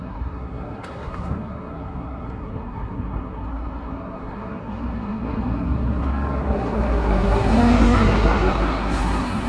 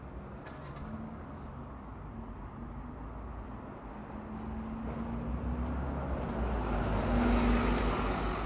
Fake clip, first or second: first